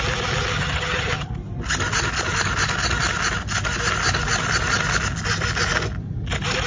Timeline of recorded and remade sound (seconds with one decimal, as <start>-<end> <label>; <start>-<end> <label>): 0.0-0.5 recorded; 0.5-1.3 remade; 1.3-6.7 recorded